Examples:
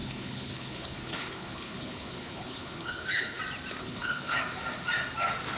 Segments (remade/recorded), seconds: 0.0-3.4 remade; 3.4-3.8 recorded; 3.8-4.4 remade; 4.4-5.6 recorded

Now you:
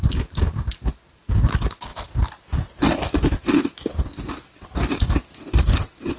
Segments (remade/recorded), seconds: 0.0-6.2 recorded